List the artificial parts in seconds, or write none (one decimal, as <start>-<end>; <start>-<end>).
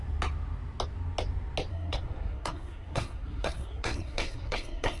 1.7-5.0